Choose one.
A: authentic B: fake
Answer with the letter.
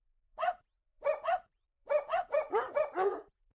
B